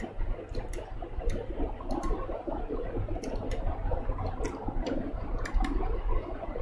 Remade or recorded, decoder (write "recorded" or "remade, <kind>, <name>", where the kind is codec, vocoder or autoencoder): remade, vocoder, BigVGAN v2